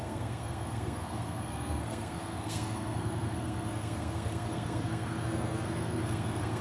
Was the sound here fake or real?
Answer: fake